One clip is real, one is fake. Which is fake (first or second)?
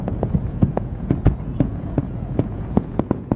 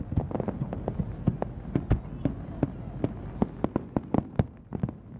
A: first